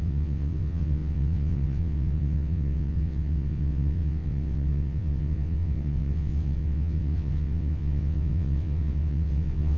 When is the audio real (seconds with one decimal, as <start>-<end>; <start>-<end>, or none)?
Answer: none